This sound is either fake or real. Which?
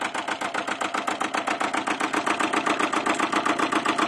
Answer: real